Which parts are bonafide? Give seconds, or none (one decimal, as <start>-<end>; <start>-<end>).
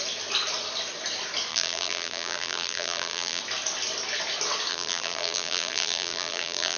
0.0-1.5; 3.4-4.7